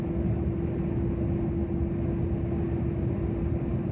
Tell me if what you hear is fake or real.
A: real